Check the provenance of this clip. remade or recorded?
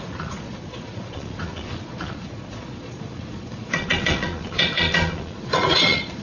remade